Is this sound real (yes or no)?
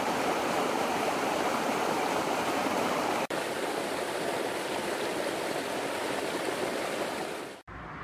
no